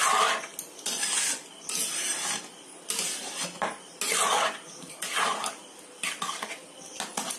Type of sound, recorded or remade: recorded